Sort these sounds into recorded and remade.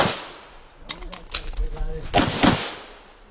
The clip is recorded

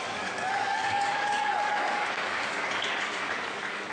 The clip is remade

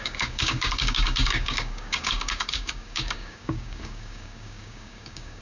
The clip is remade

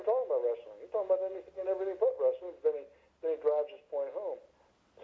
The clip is recorded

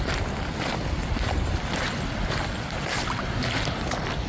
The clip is recorded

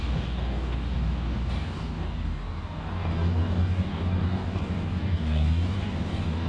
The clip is remade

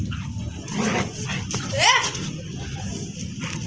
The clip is recorded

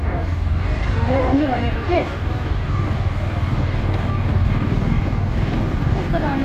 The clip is remade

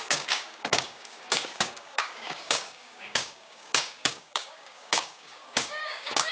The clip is remade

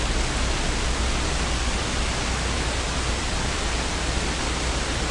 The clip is recorded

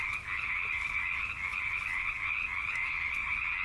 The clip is recorded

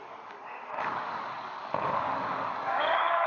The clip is remade